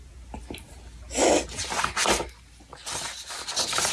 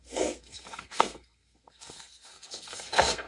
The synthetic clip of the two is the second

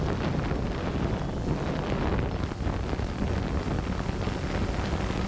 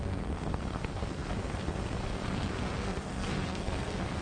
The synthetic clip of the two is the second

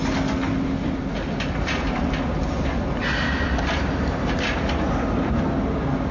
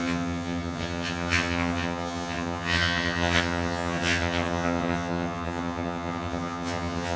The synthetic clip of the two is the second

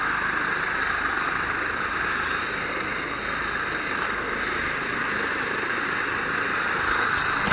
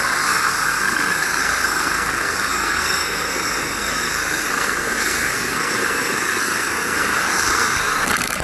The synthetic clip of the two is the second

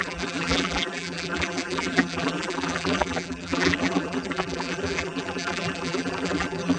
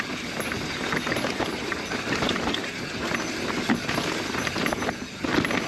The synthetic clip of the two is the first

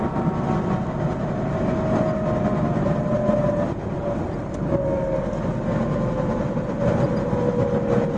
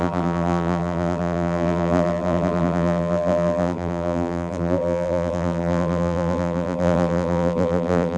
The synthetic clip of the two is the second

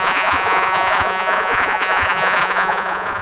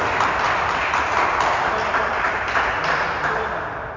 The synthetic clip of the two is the first